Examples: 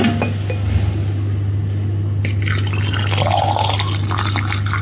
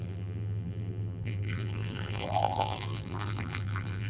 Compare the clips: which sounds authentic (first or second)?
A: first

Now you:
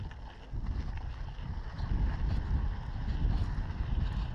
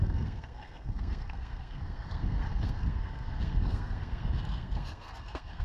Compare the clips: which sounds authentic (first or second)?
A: first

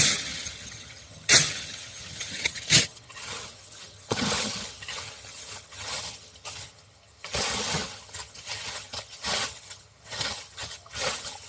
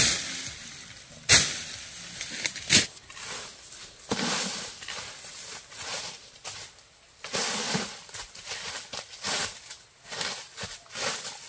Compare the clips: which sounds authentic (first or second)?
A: second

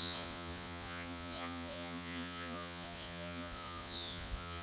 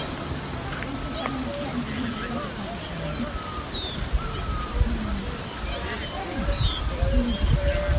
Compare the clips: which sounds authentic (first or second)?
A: second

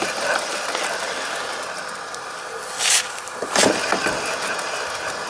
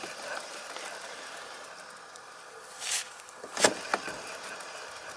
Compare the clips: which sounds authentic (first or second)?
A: first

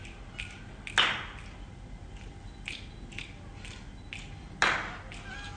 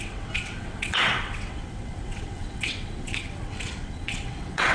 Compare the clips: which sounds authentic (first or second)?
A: first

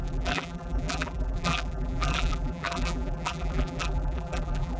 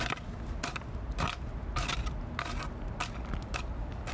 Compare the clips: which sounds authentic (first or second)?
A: second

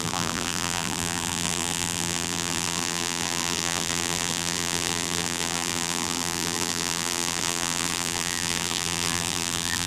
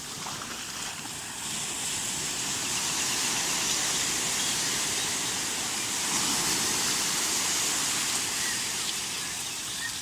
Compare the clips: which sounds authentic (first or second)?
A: second